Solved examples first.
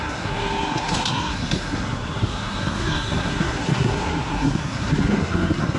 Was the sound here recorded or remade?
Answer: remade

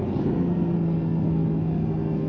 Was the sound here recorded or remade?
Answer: remade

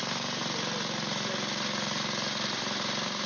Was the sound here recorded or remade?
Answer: recorded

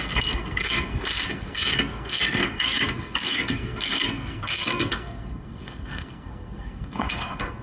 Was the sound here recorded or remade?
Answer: remade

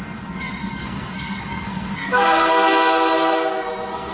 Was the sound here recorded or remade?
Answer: remade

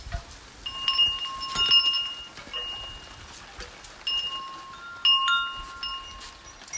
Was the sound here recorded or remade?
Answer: recorded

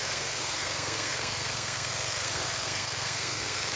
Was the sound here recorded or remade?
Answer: remade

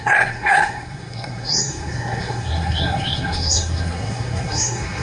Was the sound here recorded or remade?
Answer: remade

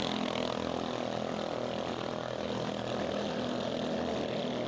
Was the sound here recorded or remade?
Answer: recorded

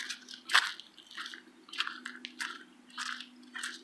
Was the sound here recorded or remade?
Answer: recorded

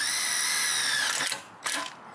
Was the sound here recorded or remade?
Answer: recorded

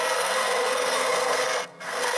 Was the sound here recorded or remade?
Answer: remade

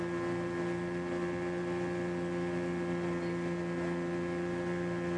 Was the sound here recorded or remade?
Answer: recorded